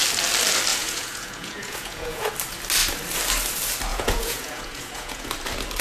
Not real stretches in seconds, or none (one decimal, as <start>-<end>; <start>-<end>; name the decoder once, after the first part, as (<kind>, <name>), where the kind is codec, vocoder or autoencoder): 0.7-2.3 (vocoder, Vocos); 3.9-5.3